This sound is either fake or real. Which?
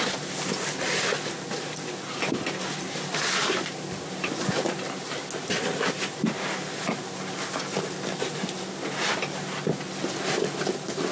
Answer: real